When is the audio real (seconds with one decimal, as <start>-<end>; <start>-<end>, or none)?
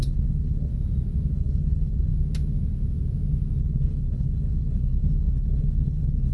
0.7-1.3; 2.1-3.6